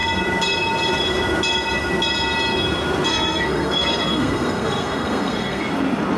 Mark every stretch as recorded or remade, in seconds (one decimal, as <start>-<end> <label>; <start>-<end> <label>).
0.0-3.1 recorded; 3.1-5.6 remade; 5.6-6.2 recorded